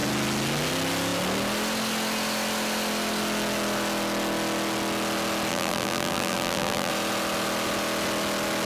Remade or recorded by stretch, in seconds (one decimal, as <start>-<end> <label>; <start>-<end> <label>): 0.0-5.5 recorded; 5.5-6.9 remade; 6.9-8.7 recorded